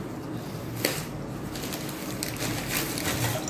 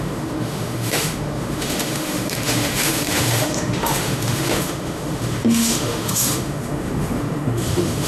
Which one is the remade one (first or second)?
second